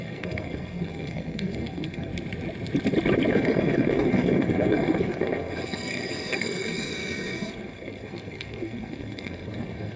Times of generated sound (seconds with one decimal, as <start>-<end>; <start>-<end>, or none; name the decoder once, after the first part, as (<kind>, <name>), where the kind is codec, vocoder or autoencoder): 0.0-2.1 (codec, SNAC); 3.3-10.0